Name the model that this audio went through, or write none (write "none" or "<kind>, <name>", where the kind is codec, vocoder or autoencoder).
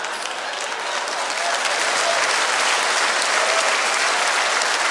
none